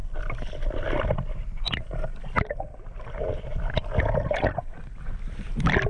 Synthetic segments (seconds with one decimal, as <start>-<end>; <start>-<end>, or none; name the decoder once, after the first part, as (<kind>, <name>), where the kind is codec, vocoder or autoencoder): none